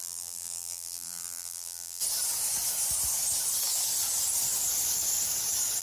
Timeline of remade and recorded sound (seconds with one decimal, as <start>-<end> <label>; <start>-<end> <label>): 0.0-2.0 remade; 2.0-5.8 recorded